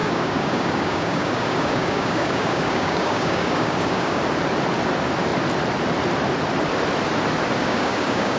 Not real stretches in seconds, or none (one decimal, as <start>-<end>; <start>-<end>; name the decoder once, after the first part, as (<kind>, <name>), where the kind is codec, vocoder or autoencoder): 0.0-4.2 (codec, DAC); 7.6-8.4